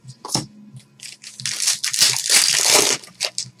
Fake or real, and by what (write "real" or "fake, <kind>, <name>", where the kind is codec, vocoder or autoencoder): real